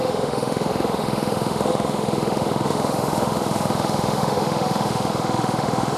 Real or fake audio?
fake